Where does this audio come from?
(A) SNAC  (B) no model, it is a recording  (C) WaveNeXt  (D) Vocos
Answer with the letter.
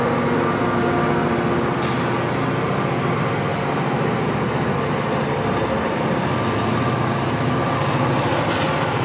B